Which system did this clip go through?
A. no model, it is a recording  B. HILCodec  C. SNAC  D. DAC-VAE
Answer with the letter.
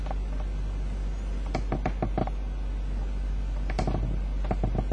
A